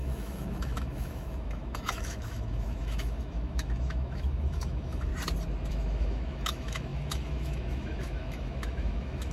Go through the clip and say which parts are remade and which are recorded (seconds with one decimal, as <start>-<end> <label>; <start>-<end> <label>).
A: 0.0-5.1 remade; 5.1-5.7 recorded; 5.7-9.3 remade